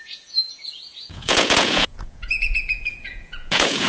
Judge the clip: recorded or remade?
remade